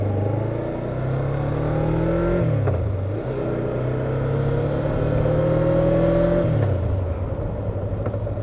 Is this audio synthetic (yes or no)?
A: no